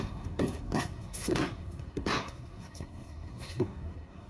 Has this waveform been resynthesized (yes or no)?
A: yes